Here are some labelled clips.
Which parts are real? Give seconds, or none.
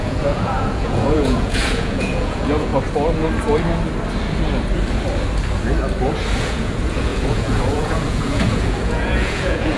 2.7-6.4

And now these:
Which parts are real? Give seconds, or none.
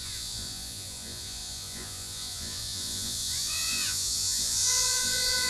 none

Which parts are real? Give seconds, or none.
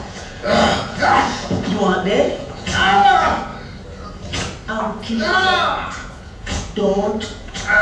3.5-5.1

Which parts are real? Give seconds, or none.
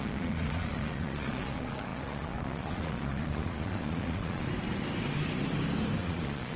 4.5-6.0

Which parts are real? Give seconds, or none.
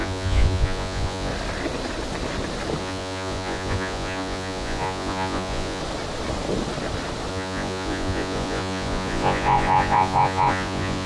1.3-2.8; 5.8-7.3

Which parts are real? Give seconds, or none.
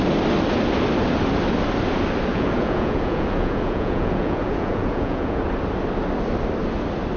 0.0-2.3; 5.4-7.2